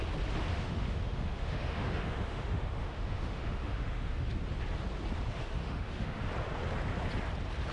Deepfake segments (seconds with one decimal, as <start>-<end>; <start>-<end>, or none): 0.5-4.3; 5.6-6.2